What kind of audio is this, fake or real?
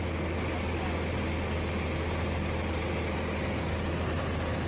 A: real